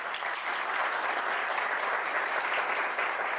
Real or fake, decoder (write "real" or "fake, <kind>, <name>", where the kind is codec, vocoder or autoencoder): real